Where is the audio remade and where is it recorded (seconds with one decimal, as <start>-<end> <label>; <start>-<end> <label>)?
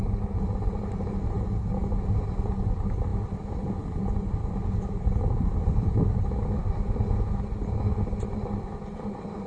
0.0-9.5 recorded